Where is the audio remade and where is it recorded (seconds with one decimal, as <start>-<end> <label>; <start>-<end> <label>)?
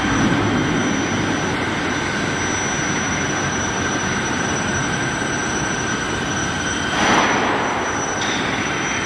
0.0-0.8 remade; 0.8-3.1 recorded; 3.1-9.1 remade